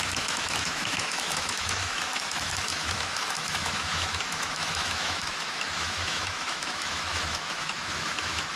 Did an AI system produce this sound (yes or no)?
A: yes